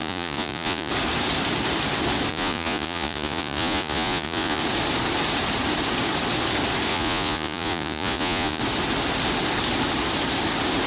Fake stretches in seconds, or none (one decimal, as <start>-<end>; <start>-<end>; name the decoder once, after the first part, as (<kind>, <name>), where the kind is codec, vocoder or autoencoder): 0.0-0.9 (vocoder, Vocos); 2.3-4.6; 6.9-8.6